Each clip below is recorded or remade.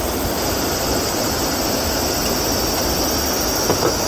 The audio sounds recorded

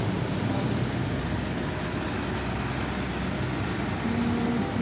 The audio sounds recorded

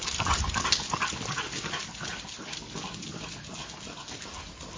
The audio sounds recorded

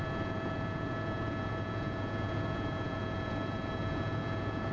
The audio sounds remade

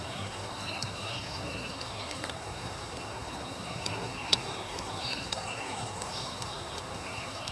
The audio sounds remade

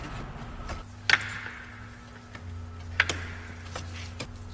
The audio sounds recorded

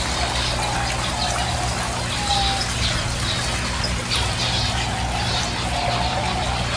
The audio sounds recorded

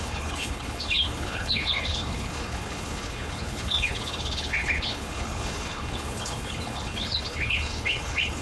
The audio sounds remade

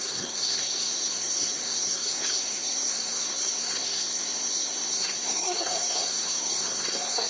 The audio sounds remade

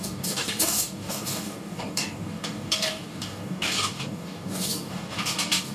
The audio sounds remade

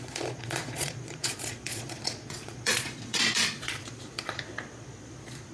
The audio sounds remade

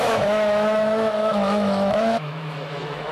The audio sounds remade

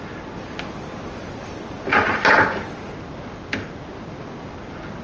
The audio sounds recorded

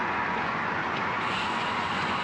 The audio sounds remade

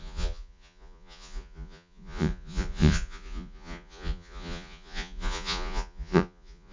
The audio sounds remade